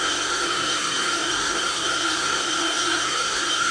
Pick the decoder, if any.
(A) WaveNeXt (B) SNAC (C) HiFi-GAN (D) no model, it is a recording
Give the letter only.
B